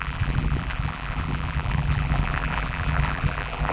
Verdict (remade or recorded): remade